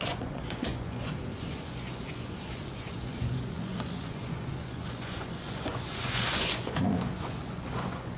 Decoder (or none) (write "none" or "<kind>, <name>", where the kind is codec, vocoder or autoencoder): vocoder, Vocos